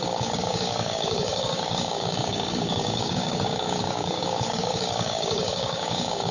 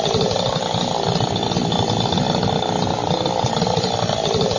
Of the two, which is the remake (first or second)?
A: first